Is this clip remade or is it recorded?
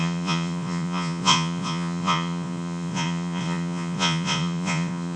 remade